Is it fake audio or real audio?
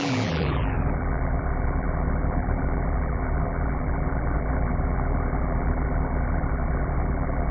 fake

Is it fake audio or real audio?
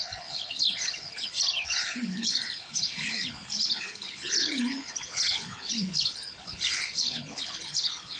fake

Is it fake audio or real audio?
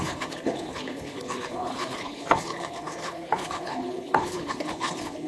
fake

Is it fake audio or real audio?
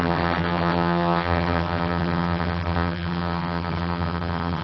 fake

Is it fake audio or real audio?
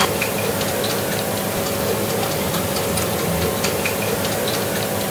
fake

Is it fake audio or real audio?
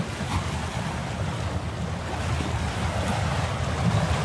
real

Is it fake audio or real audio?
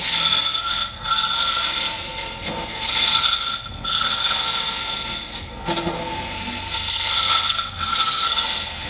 fake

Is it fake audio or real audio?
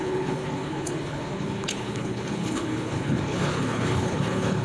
fake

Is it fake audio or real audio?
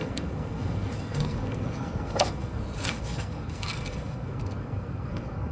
fake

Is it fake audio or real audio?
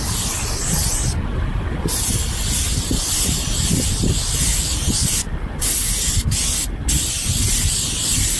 real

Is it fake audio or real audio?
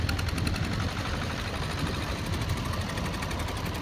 real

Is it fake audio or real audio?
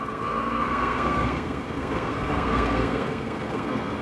fake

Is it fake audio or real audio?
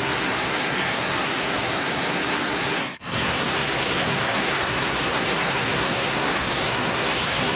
fake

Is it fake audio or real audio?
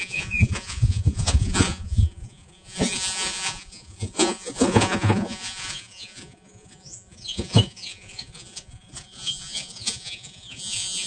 fake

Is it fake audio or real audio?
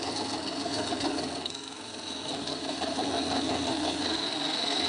fake